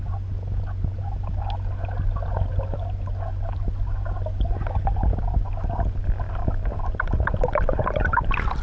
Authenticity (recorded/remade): recorded